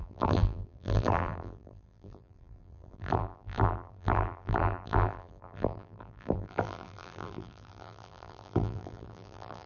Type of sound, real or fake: fake